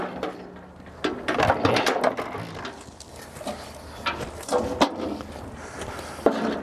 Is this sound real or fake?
real